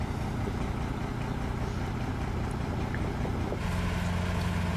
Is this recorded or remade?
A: recorded